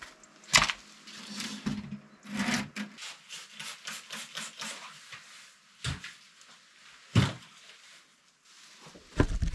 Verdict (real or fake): real